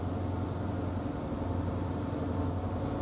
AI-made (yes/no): no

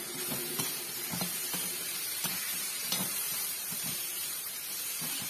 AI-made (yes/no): yes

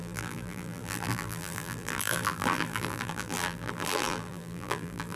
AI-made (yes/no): yes